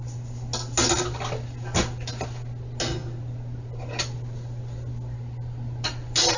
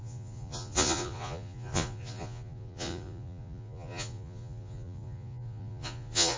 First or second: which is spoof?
second